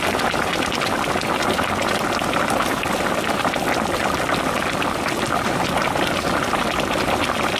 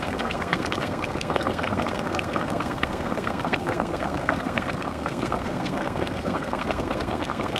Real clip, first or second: first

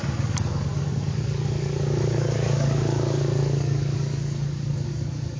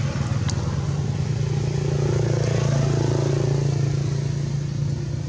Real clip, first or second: second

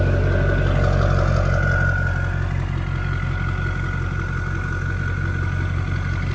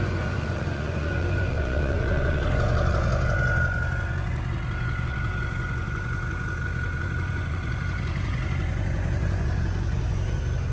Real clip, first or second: first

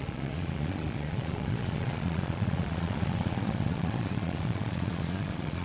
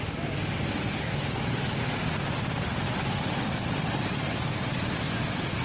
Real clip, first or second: second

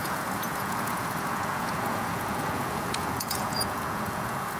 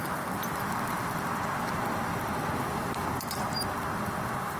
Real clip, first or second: second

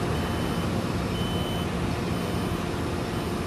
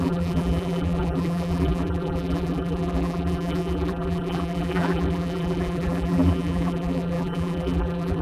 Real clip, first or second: first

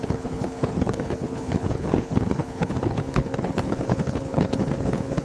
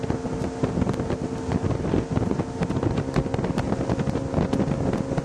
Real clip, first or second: second